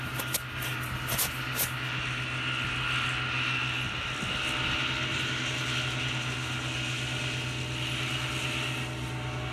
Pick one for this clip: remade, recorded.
recorded